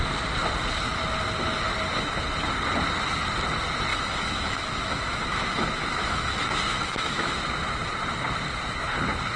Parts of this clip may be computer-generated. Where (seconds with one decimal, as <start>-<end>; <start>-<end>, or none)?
3.9-7.4